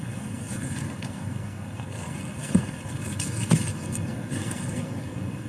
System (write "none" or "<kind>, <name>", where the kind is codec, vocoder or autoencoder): codec, SNAC